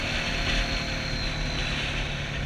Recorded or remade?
recorded